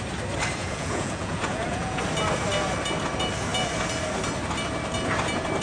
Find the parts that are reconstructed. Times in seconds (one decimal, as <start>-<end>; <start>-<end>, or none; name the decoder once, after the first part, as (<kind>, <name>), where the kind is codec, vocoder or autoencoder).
0.6-2.0 (vocoder, Vocos)